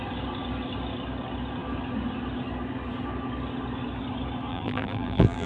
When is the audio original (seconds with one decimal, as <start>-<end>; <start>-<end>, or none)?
0.0-4.5